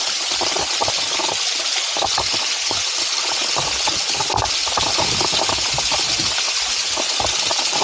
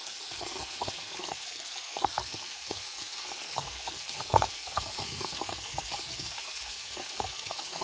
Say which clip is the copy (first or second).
second